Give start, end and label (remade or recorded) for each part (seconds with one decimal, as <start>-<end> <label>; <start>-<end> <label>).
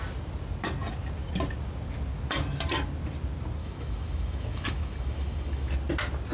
0.0-3.6 recorded; 3.6-5.7 remade; 5.7-6.3 recorded